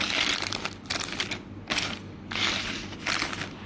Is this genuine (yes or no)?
yes